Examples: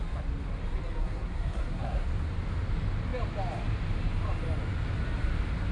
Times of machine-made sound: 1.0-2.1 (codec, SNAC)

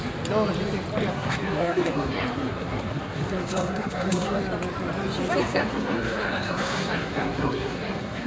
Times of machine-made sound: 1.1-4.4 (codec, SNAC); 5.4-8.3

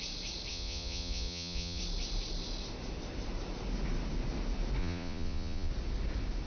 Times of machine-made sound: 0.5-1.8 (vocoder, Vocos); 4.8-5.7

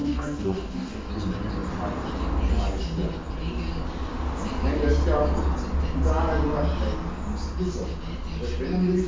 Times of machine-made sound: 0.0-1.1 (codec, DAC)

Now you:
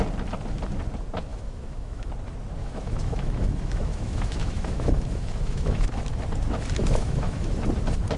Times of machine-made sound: 1.3-2.1 (autoencoder, DAC-VAE); 2.6-6.1; 6.8-7.5

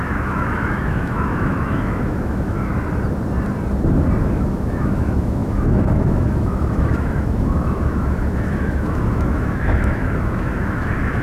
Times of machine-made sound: 0.0-2.7 (autoencoder, DAC-VAE); 4.2-11.2

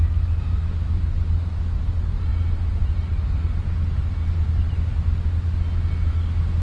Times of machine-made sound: none

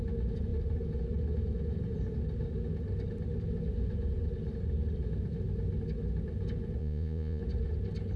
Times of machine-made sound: 6.8-7.4 (vocoder, Vocos)